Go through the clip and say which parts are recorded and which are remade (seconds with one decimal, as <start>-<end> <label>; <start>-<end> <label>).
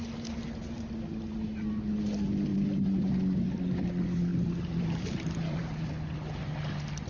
0.0-2.5 recorded; 2.5-3.1 remade; 3.1-4.3 recorded; 4.3-5.9 remade; 5.9-7.1 recorded